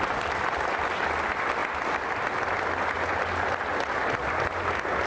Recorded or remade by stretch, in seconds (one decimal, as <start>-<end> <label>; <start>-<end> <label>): 0.0-5.1 recorded